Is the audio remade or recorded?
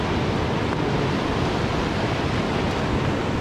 recorded